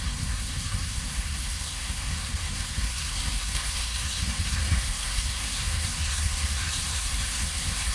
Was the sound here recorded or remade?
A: remade